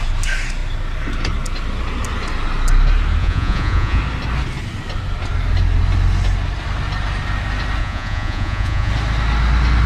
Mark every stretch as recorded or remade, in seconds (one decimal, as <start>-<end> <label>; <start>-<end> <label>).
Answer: 0.0-3.2 recorded; 3.2-4.0 remade; 4.0-7.8 recorded; 7.8-8.9 remade; 8.9-9.9 recorded